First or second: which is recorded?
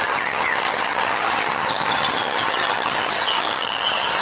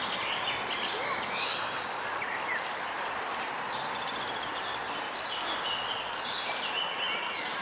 second